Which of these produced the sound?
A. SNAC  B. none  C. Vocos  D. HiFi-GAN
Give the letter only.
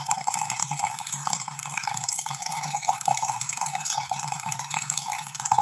A